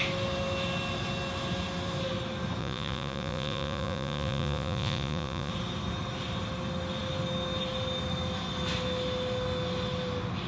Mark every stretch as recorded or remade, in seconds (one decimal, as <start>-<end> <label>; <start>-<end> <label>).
0.0-2.6 recorded; 2.6-5.5 remade; 5.5-10.5 recorded